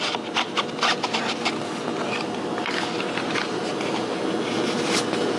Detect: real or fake real